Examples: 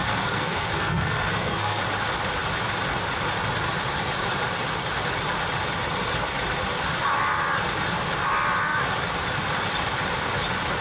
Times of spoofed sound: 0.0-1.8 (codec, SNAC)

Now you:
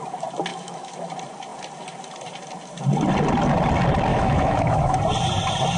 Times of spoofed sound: 0.5-1.1 (autoencoder, DAC-VAE); 4.1-5.0

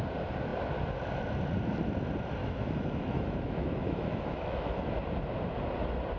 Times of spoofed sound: 2.4-4.8 (autoencoder, DAC-VAE)

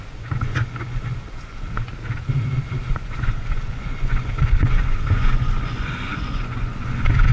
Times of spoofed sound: 0.0-1.9 (vocoder, Vocos); 2.9-7.3

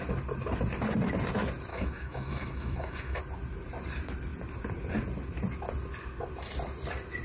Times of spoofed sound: 1.7-3.2 (autoencoder, DAC-VAE)

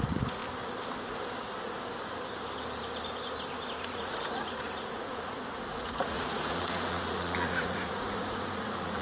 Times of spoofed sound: 0.0-0.4 (vocoder, Vocos); 3.8-9.0

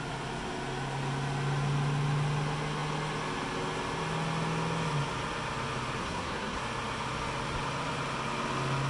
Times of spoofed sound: 6.0-6.6 (codec, SNAC)